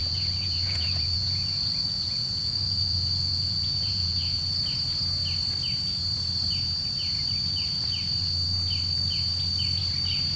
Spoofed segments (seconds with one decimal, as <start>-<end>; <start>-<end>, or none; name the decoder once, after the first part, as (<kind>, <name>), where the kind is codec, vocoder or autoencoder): 0.0-4.6 (vocoder, Vocos)